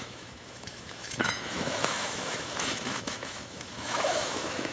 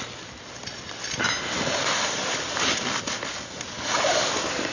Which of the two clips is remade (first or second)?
first